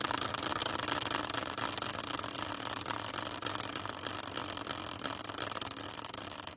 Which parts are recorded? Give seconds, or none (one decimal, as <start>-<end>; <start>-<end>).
0.0-6.6